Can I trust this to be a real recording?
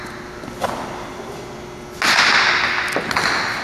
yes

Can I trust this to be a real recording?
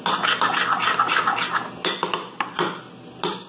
yes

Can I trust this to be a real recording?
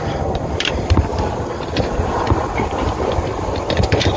no